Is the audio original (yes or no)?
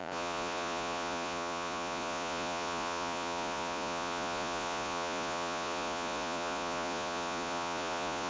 no